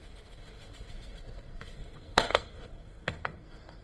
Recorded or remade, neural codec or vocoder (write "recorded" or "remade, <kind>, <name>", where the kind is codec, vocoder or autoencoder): remade, codec, SNAC